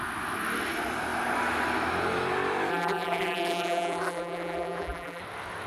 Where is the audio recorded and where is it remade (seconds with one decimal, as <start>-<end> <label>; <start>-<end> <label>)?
0.0-2.7 recorded; 2.7-5.2 remade; 5.2-5.7 recorded